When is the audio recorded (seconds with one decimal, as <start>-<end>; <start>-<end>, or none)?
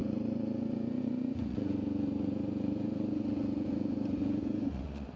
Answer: none